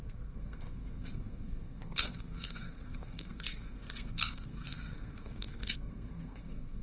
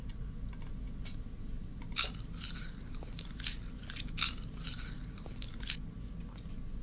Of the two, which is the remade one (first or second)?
first